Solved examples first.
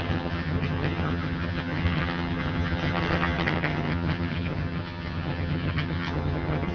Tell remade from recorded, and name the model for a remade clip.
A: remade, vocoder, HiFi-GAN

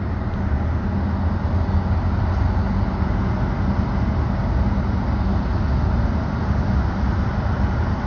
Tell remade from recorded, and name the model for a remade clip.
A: recorded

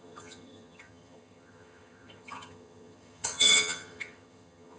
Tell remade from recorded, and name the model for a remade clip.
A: remade, vocoder, HiFi-GAN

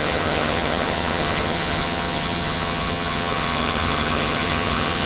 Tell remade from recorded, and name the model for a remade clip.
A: remade, vocoder, HiFi-GAN